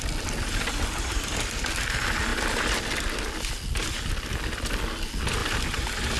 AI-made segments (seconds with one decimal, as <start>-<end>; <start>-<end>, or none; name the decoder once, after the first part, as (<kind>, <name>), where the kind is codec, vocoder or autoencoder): none